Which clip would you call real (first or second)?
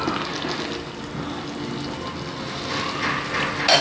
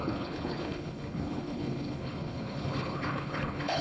first